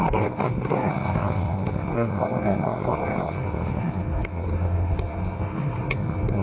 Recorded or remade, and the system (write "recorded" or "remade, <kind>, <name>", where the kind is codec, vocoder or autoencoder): remade, codec, SNAC